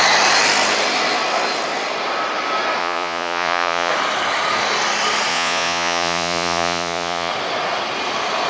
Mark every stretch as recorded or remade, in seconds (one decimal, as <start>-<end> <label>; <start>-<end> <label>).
0.0-2.8 recorded; 2.8-3.9 remade; 3.9-5.3 recorded; 5.3-7.3 remade; 7.3-8.5 recorded